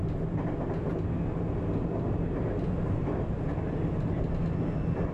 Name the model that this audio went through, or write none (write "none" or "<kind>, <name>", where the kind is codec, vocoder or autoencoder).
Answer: none